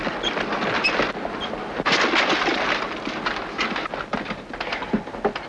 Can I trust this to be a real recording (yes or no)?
yes